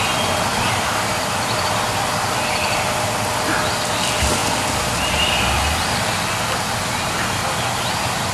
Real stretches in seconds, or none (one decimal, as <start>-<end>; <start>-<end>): 0.0-8.3